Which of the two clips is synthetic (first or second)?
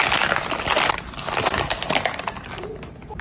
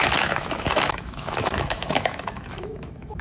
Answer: second